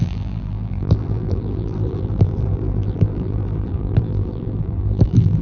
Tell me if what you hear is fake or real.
fake